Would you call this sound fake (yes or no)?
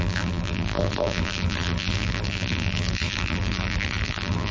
yes